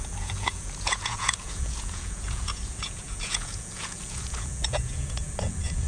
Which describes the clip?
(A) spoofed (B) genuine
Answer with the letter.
A